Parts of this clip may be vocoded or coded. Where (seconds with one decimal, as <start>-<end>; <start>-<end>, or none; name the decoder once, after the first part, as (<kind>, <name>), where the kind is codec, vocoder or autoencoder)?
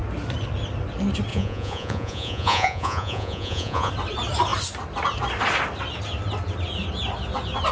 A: 1.3-3.9 (vocoder, Vocos)